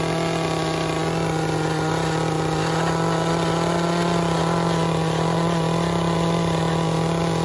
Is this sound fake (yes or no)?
no